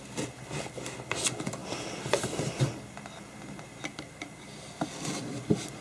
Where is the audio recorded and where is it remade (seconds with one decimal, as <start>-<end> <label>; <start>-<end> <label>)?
0.0-5.8 recorded